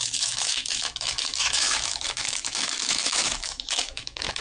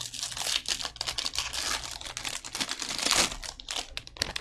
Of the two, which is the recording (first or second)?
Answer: second